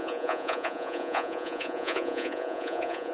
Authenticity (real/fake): fake